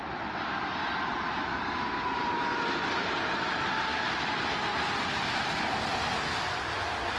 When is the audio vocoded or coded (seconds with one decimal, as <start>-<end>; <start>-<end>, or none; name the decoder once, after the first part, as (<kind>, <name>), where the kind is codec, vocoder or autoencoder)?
0.8-3.2 (vocoder, BigVGAN v2)